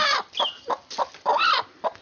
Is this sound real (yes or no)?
yes